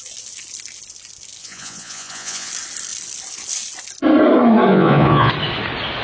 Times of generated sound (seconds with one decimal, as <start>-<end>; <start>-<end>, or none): 1.4-2.5; 4.7-5.3